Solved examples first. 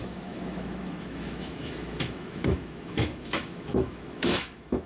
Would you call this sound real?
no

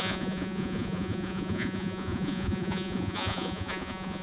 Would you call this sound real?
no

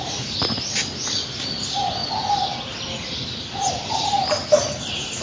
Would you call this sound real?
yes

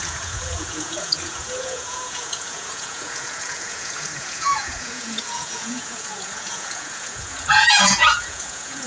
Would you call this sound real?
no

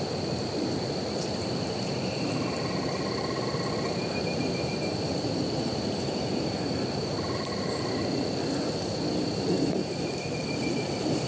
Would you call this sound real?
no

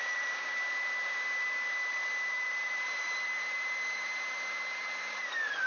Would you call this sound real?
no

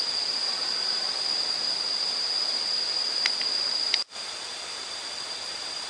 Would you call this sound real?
no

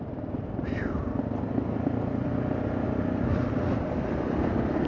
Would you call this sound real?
yes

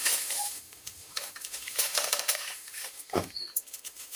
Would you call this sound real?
no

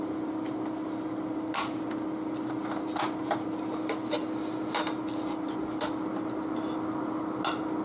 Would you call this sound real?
yes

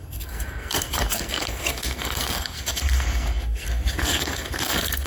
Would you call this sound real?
no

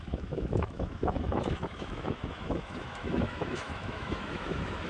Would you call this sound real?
no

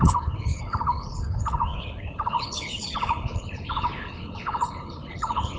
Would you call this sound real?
no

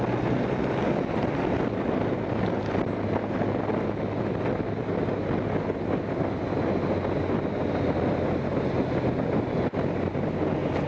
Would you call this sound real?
yes